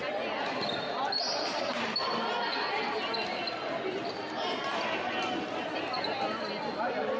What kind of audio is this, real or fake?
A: real